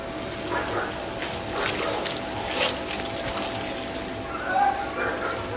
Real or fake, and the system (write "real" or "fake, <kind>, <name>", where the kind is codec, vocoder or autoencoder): real